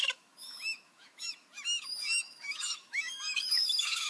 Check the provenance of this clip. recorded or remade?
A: remade